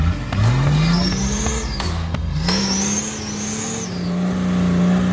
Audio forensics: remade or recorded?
recorded